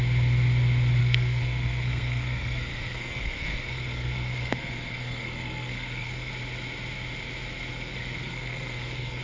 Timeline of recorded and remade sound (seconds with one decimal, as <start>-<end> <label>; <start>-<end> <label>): 0.0-1.0 recorded; 1.0-6.3 remade; 6.3-7.7 recorded; 7.7-9.2 remade